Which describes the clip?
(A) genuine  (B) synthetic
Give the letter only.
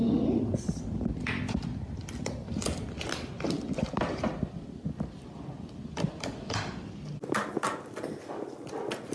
A